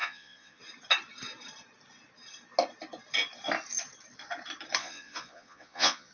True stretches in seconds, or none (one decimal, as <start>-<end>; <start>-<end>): 0.6-4.8